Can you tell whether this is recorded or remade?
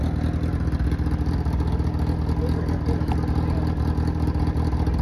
recorded